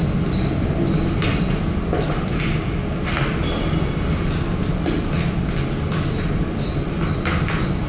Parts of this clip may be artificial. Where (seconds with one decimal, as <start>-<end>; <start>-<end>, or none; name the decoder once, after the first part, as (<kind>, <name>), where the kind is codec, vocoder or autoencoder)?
none

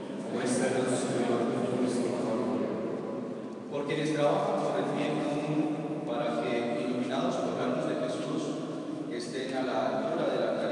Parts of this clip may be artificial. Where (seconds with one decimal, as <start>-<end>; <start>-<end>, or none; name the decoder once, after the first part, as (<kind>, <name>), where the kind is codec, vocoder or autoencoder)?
0.0-2.5 (autoencoder, DAC-VAE); 3.9-10.7

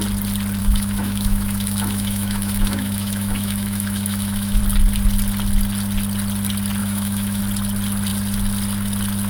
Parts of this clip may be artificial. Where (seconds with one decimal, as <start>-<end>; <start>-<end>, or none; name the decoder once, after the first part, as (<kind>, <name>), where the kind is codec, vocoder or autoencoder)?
0.6-4.6 (autoencoder, DAC-VAE); 6.8-7.4

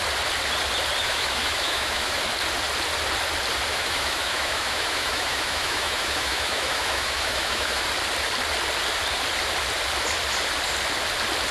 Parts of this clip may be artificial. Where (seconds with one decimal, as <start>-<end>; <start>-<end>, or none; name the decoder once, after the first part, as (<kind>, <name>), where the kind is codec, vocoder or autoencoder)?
1.0-2.2 (autoencoder, DAC-VAE); 3.7-7.8

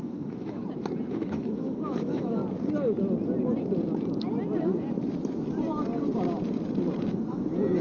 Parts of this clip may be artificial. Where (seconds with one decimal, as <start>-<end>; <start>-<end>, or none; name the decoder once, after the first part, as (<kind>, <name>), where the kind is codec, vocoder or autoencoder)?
0.0-0.6 (autoencoder, DAC-VAE); 1.1-2.4; 7.1-7.8

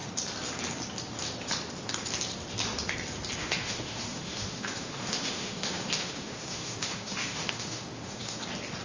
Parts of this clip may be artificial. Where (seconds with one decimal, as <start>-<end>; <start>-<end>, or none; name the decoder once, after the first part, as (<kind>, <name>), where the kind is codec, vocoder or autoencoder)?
3.4-8.4 (autoencoder, DAC-VAE)

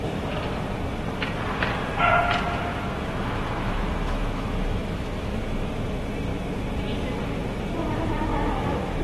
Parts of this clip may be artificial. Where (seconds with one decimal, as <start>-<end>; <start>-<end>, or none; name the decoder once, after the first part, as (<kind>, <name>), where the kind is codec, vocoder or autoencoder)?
2.7-5.7 (autoencoder, DAC-VAE); 8.3-9.0

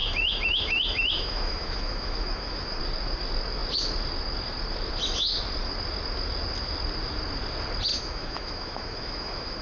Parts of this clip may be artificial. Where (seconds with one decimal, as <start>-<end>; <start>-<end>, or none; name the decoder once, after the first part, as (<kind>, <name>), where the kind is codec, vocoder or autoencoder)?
0.0-2.8 (autoencoder, DAC-VAE); 7.9-9.6